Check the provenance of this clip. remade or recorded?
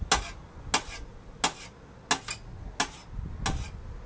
recorded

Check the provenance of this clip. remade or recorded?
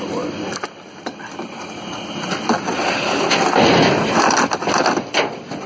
recorded